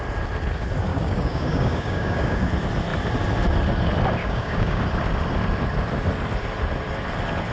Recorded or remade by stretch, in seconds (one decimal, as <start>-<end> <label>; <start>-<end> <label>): 0.0-0.9 recorded; 0.9-2.5 remade; 2.5-4.2 recorded; 4.2-4.8 remade; 4.8-7.5 recorded